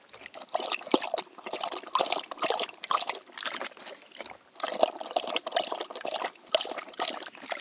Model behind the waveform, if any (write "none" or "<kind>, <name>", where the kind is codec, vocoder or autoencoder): none